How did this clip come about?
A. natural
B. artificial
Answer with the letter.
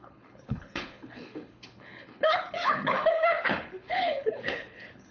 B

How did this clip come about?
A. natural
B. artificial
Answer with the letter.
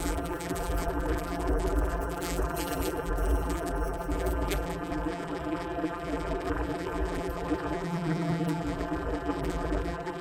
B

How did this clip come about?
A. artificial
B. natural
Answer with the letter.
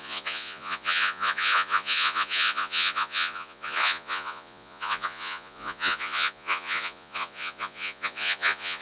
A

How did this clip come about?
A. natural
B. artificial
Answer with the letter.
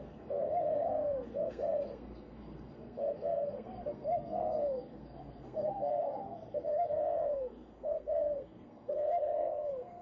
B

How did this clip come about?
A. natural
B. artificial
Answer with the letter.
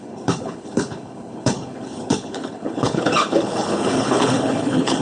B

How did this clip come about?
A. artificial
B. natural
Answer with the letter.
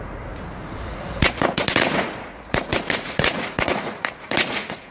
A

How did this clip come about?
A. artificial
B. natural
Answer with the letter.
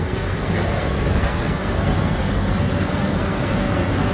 A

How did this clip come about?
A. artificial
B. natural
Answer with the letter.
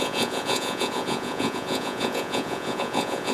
A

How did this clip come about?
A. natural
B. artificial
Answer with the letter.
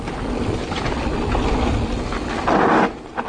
A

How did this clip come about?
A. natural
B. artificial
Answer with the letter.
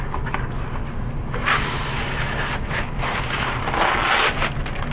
A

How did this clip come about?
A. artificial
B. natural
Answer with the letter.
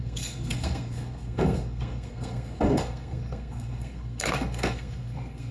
A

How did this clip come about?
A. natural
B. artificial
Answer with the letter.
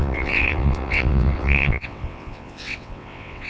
B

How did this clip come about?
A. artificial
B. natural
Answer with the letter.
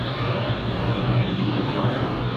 A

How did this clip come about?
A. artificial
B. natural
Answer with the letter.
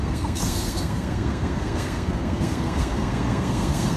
A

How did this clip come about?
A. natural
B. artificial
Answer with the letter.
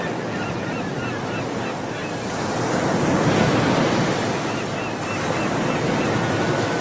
A